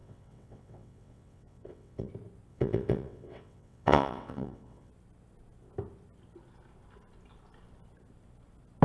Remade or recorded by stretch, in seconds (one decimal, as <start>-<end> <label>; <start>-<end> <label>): 0.0-2.1 remade; 2.1-2.5 recorded; 2.5-4.9 remade; 4.9-8.8 recorded